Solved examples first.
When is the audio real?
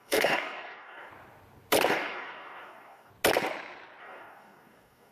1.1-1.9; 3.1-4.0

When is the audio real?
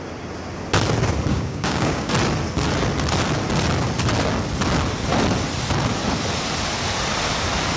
0.0-1.3; 2.1-7.8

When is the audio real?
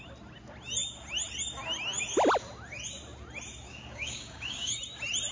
0.0-3.7; 4.7-5.3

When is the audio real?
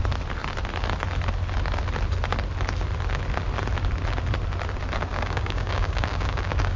0.0-5.1